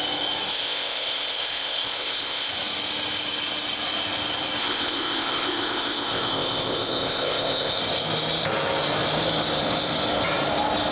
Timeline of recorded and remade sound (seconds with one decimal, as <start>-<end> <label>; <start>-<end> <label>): 0.0-0.5 recorded; 0.5-2.5 remade; 2.5-4.6 recorded; 4.6-7.8 remade; 7.8-10.9 recorded